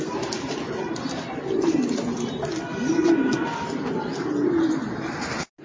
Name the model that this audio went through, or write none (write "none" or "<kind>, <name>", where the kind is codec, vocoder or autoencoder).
vocoder, BigVGAN v2